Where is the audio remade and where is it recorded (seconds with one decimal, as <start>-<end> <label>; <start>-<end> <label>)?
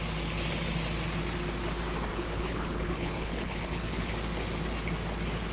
0.0-2.1 recorded; 2.1-4.1 remade; 4.1-5.5 recorded